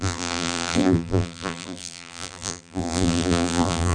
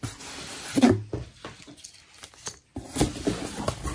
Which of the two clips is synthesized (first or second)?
first